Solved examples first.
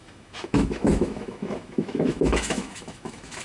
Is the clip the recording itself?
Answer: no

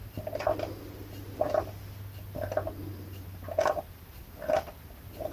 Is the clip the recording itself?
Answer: yes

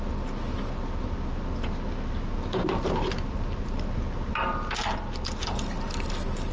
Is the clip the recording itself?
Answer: yes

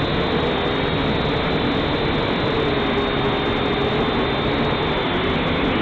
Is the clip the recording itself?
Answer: yes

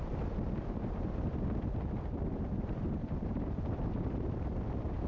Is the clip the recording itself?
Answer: no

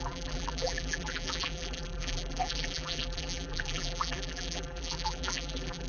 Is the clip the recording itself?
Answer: no